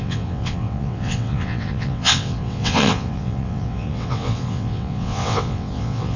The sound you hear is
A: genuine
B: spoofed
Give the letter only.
B